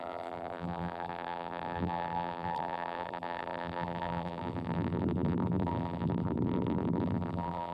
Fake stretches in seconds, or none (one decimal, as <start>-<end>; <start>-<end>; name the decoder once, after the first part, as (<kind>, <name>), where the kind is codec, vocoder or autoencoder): 0.0-7.7 (vocoder, BigVGAN v2)